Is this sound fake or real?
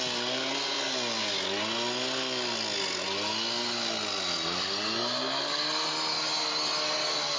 real